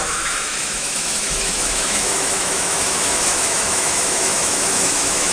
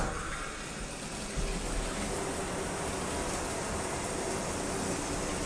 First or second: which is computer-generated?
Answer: first